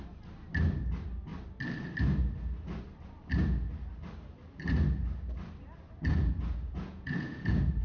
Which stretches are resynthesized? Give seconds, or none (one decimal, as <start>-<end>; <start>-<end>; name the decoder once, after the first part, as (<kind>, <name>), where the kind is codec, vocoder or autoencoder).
6.1-7.8 (vocoder, Vocos)